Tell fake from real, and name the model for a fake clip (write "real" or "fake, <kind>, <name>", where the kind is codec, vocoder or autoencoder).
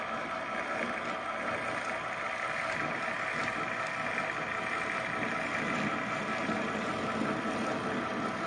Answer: real